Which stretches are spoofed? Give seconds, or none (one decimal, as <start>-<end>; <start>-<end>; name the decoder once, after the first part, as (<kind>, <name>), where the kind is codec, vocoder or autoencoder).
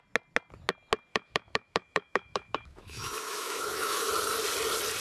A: 1.1-4.1 (autoencoder, DAC-VAE)